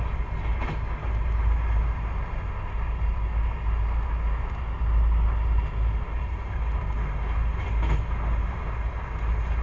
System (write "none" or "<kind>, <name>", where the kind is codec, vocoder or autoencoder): none